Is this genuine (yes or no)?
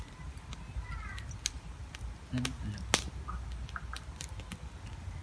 yes